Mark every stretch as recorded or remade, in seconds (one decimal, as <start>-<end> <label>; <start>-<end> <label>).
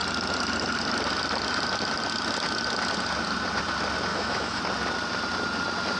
0.0-4.1 recorded; 4.1-4.6 remade; 4.6-6.0 recorded